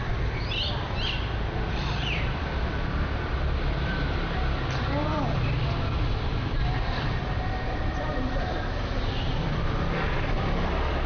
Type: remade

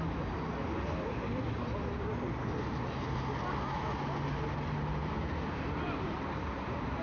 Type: recorded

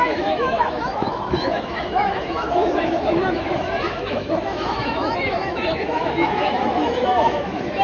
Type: remade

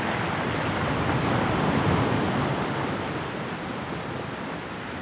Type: recorded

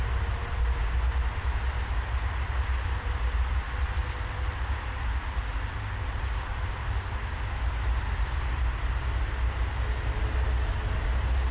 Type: recorded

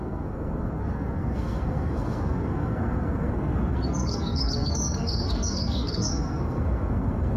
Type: remade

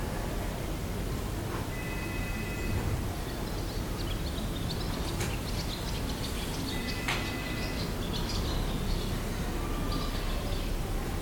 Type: recorded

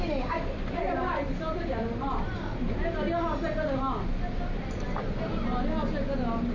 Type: recorded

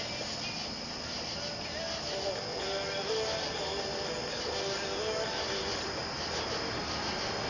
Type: recorded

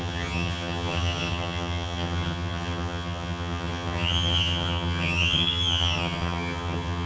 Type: remade